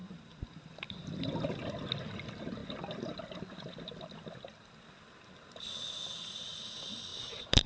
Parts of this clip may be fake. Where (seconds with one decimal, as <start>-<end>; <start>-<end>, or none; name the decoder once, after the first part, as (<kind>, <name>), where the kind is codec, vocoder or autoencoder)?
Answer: 0.0-0.7 (vocoder, BigVGAN v2); 7.1-7.7